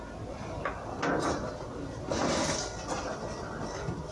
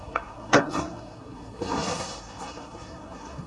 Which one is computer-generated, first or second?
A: second